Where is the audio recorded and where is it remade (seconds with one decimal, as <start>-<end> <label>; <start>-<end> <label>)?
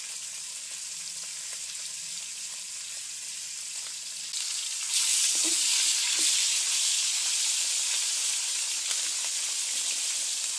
0.0-10.6 recorded